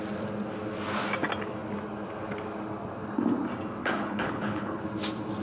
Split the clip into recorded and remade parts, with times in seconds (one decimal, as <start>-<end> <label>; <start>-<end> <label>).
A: 0.0-3.8 recorded; 3.8-4.8 remade; 4.8-5.4 recorded